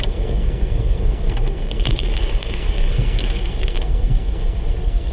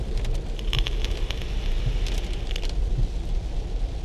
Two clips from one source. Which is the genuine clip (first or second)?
second